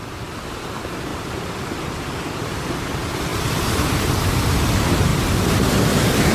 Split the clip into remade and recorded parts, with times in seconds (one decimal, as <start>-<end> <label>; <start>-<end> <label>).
0.0-1.1 recorded; 1.1-2.7 remade; 2.7-3.3 recorded; 3.3-3.8 remade; 3.8-5.1 recorded; 5.1-6.3 remade